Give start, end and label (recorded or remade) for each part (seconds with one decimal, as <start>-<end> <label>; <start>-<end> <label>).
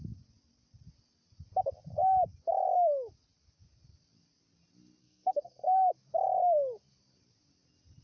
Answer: 0.0-5.0 recorded; 5.0-5.9 remade; 5.9-8.0 recorded